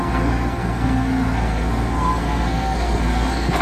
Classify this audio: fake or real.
fake